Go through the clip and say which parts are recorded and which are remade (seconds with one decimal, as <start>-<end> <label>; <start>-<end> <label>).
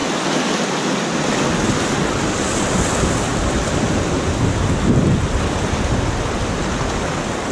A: 0.0-7.5 recorded